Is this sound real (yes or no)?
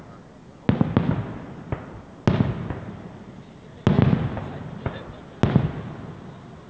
yes